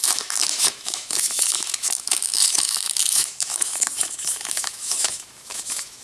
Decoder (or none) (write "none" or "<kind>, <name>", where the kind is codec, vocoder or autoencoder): autoencoder, DAC-VAE